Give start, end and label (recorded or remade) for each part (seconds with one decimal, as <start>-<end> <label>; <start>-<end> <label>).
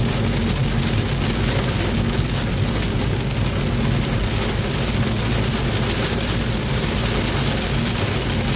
0.0-8.6 recorded